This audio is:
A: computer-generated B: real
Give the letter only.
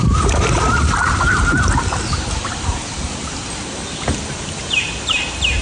B